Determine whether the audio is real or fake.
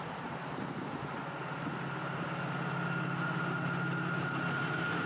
real